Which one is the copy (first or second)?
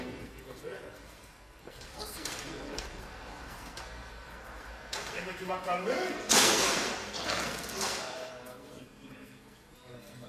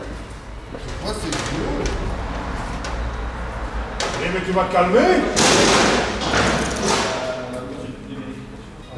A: first